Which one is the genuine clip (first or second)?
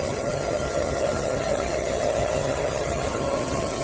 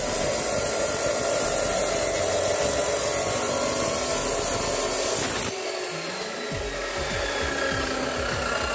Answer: second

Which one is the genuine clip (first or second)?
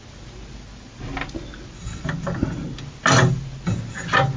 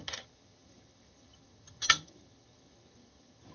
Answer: first